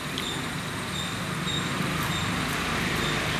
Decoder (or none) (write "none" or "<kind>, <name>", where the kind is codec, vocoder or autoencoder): none